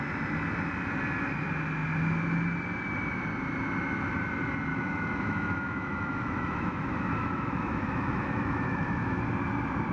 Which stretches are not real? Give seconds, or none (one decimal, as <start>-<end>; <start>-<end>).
4.7-9.2